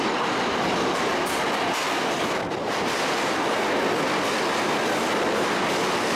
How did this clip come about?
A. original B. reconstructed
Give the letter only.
A